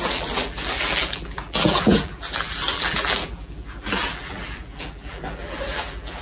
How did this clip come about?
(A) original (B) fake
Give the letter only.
B